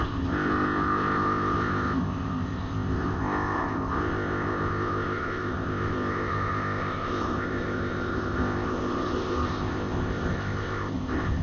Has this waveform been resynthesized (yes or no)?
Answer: yes